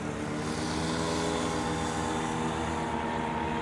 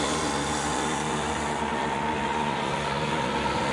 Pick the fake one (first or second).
second